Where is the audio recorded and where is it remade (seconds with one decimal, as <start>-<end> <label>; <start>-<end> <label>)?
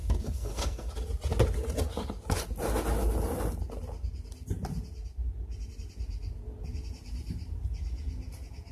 0.0-0.9 remade; 0.9-8.7 recorded